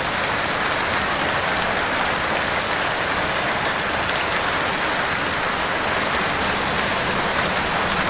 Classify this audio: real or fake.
real